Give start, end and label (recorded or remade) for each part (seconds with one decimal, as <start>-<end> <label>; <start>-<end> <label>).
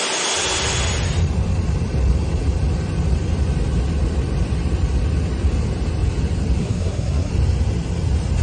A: 0.0-6.6 recorded; 6.6-7.3 remade; 7.3-8.4 recorded